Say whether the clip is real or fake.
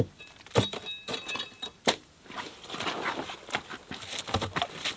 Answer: real